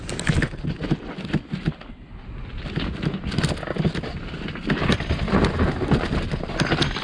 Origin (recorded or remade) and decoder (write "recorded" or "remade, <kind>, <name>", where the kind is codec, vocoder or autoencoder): recorded